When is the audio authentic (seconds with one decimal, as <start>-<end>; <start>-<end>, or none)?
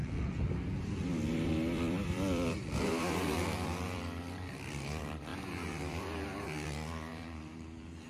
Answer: 0.0-0.8